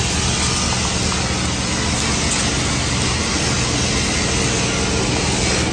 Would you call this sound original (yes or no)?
yes